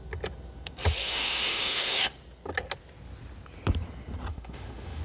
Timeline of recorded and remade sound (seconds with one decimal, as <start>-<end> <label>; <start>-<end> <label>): 0.0-1.0 recorded; 1.0-2.1 remade; 2.1-4.3 recorded; 4.3-5.0 remade